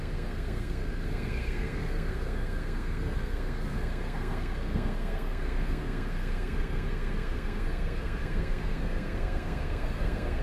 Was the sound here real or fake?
fake